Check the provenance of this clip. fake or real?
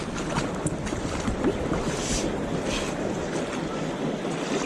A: real